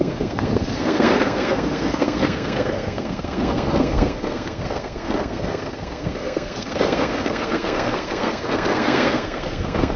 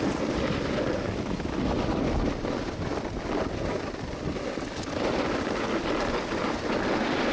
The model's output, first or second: first